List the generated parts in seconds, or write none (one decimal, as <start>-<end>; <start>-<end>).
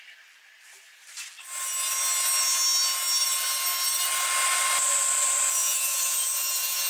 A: 5.6-6.9